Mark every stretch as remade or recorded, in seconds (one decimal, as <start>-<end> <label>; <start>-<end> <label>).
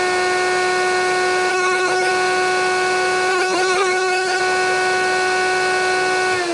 0.0-1.5 recorded; 1.5-2.1 remade; 2.1-3.3 recorded; 3.3-4.4 remade; 4.4-6.5 recorded